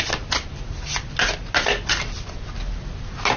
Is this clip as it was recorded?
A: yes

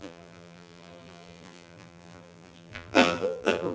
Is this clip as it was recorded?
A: no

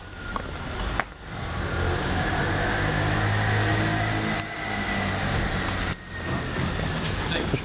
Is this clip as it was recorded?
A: yes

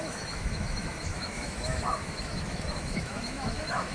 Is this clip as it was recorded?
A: no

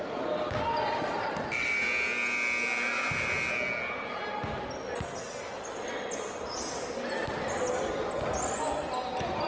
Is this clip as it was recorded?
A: yes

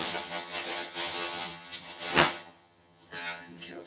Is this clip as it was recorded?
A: no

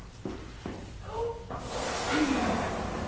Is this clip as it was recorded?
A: yes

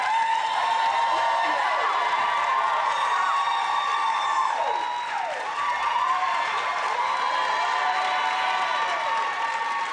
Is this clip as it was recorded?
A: no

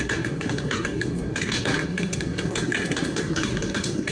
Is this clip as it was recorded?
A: no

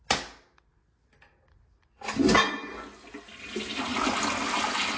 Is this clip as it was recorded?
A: yes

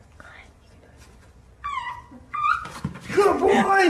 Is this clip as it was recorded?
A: no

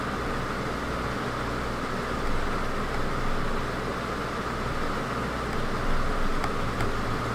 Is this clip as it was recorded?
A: yes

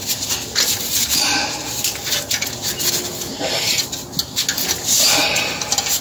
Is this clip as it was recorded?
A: yes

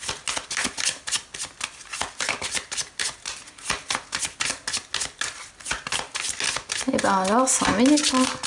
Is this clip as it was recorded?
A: yes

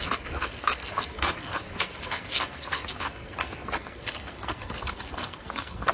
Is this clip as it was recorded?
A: no